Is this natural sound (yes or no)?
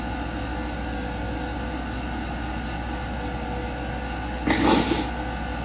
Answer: yes